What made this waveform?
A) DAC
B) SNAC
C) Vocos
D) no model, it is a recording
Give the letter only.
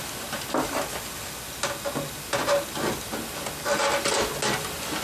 D